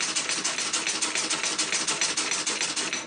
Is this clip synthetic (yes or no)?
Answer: no